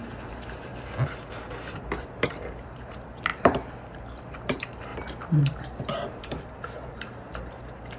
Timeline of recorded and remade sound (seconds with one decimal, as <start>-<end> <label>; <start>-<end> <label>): 0.0-0.7 remade; 0.7-1.3 recorded; 1.3-8.0 remade